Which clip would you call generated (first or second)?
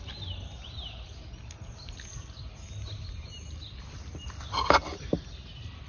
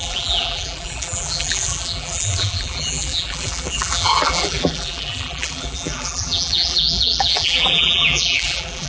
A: second